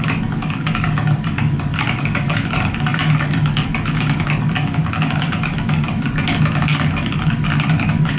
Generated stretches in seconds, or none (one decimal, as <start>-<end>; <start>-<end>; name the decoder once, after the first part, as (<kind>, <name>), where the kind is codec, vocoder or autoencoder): 0.0-8.2 (codec, DAC)